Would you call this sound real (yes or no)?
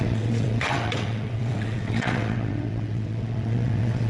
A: no